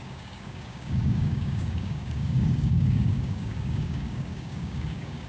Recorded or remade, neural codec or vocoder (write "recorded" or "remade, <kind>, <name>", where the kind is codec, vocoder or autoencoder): remade, codec, DAC